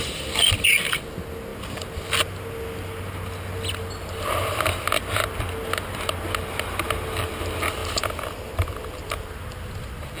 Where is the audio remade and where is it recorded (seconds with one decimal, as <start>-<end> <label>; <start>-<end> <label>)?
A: 0.0-10.2 recorded